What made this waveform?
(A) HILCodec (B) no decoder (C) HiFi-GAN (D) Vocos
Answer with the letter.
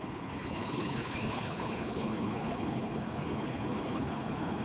A